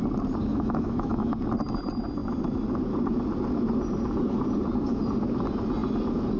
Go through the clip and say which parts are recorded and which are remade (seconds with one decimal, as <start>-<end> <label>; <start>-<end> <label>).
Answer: 0.0-0.5 recorded; 0.5-1.3 remade; 1.3-6.4 recorded